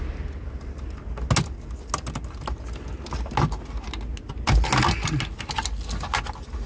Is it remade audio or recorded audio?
recorded